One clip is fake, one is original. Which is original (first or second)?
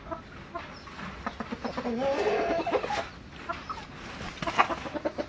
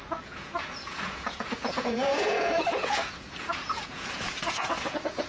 first